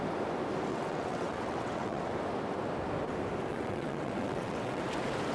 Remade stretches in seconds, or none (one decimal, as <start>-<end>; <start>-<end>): 0.7-2.0; 3.5-4.8